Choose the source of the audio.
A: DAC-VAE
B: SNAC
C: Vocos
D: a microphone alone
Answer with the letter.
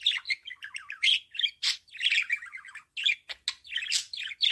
D